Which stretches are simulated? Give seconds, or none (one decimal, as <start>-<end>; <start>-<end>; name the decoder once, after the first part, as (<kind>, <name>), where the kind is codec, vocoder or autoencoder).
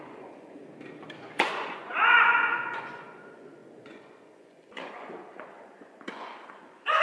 0.0-0.6 (vocoder, Vocos); 1.2-7.0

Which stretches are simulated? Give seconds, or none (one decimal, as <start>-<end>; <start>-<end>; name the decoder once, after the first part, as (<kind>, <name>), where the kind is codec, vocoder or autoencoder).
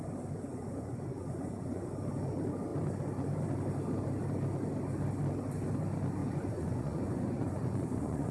0.5-1.9 (vocoder, Vocos); 6.2-8.3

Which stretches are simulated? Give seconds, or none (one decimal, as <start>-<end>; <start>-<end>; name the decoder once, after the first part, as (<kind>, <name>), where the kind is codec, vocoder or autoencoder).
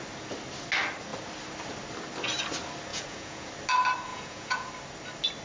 2.9-3.5 (vocoder, Vocos); 4.1-4.7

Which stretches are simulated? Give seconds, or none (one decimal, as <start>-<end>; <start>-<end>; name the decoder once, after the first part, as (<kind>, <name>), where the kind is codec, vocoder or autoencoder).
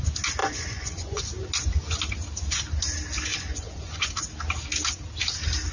0.4-1.2 (vocoder, Vocos); 3.3-4.1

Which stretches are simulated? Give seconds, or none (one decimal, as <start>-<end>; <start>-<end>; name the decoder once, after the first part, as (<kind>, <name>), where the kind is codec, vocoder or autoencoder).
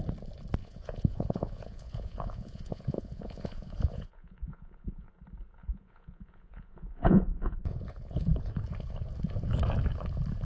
0.6-5.1 (vocoder, Vocos); 5.6-8.5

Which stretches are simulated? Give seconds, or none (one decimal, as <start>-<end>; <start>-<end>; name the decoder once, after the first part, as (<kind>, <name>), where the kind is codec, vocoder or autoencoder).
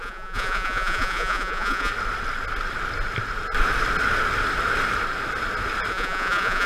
0.0-1.9 (vocoder, Vocos); 5.9-6.7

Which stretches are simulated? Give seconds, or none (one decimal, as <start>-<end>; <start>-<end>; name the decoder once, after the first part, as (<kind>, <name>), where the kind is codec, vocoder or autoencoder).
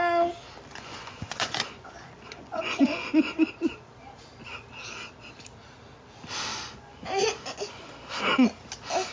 0.7-3.5 (vocoder, Vocos); 6.5-7.9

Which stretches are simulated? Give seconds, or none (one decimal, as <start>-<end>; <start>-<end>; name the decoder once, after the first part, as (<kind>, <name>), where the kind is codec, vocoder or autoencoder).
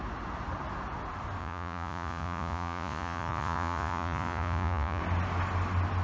1.4-5.0 (vocoder, Vocos)